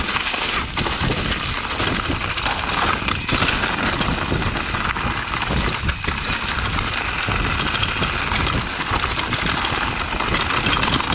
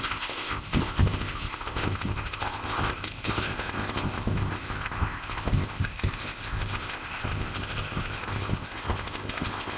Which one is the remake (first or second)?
second